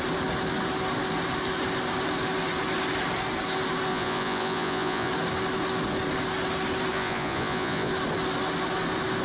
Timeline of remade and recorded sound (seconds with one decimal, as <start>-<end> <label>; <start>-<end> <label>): 0.0-3.9 recorded; 3.9-5.1 remade; 5.1-6.9 recorded; 6.9-7.9 remade; 7.9-9.2 recorded